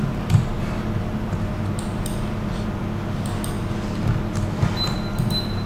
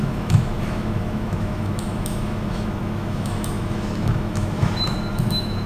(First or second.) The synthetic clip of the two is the second